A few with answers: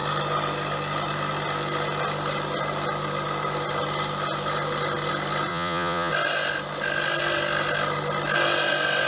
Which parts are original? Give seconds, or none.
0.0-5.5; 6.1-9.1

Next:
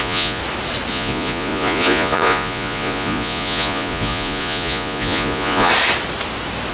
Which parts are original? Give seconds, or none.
0.4-0.9; 5.7-6.7

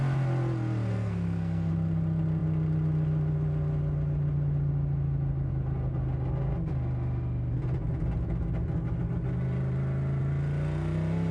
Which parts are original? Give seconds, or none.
0.0-0.9; 1.7-11.3

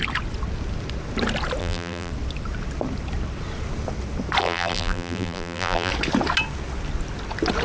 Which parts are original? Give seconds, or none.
0.0-1.6; 2.1-4.4; 5.9-7.6

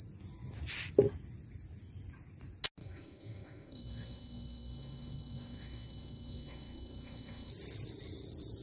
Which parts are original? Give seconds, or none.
0.0-2.8; 7.5-8.6

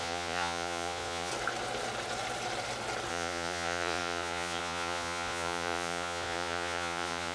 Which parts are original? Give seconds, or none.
1.3-3.1

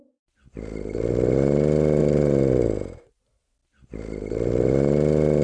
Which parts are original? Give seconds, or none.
0.0-2.0; 2.6-5.4

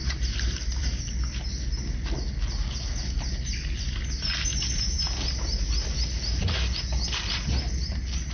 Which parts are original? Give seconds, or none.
1.1-4.5; 6.4-8.3